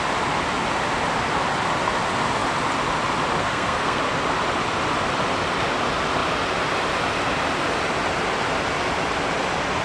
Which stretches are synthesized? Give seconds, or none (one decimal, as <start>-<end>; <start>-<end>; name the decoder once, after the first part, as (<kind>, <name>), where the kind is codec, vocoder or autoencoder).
3.4-4.0 (codec, SNAC)